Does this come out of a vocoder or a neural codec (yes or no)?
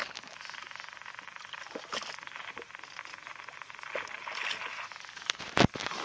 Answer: no